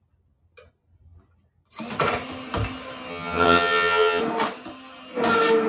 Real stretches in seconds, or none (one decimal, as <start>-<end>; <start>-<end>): 0.0-3.1; 4.2-5.7